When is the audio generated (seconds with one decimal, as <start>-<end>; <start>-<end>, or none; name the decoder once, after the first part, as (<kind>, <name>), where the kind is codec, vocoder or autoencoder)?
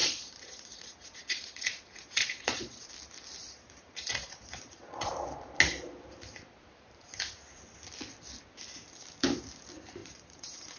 0.0-2.8 (vocoder, Vocos); 3.4-5.1; 10.0-10.8